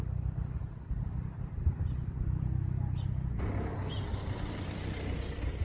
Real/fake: real